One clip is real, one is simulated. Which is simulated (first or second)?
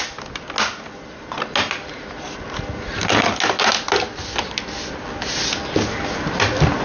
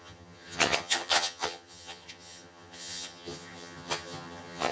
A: second